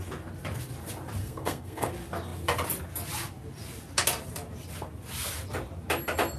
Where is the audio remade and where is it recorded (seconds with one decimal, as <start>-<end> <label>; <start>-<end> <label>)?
0.0-1.2 recorded; 1.2-1.9 remade; 1.9-6.4 recorded